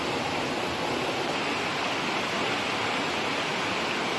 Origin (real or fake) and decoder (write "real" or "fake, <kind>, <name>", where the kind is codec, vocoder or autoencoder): real